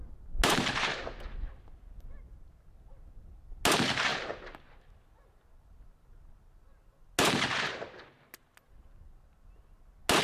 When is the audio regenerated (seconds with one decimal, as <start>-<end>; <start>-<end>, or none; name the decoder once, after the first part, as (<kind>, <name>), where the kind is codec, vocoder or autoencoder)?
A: none